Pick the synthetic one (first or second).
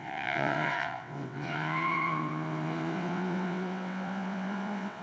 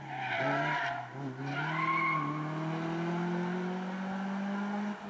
first